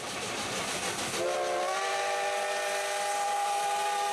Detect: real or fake real